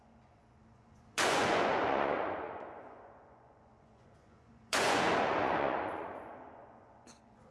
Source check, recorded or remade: remade